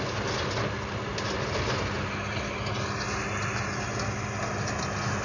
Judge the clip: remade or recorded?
recorded